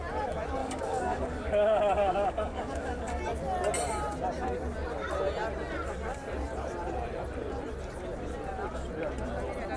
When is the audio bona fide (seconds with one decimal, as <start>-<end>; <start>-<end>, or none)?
0.0-0.6; 3.2-9.8